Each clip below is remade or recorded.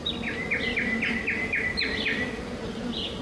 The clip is recorded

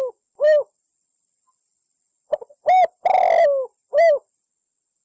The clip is recorded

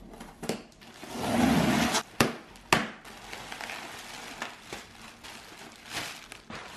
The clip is recorded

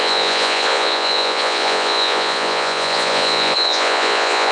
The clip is remade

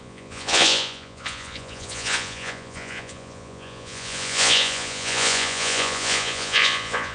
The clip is remade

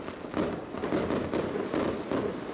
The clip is recorded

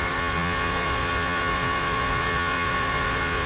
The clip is remade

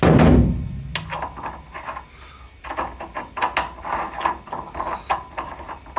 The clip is recorded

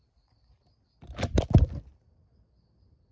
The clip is recorded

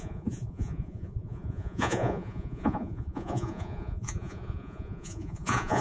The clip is remade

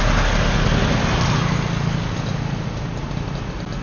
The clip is recorded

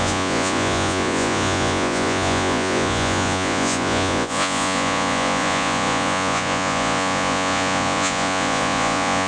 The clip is remade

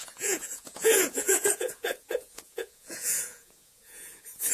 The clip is remade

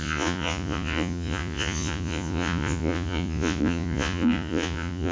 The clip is remade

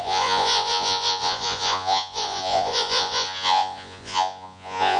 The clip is remade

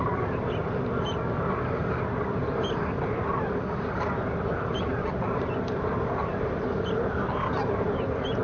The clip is recorded